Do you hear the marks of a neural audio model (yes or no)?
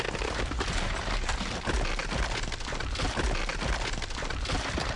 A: no